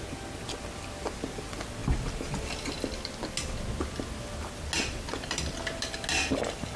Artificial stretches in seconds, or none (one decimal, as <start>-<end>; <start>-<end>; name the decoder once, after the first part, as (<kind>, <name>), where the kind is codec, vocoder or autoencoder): none